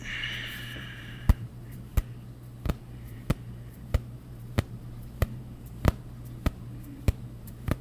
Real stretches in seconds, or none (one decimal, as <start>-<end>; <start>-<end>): 2.0-2.7